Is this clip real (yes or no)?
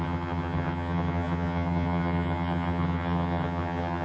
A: no